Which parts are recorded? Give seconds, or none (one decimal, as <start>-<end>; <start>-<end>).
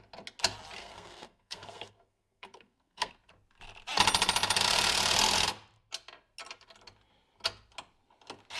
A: 0.0-0.8; 3.1-8.6